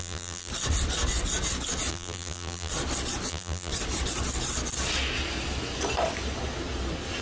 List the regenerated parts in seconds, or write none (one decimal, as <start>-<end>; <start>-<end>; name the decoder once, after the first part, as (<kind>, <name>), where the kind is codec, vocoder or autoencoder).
0.0-0.5 (vocoder, BigVGAN v2); 1.9-2.7; 3.3-3.7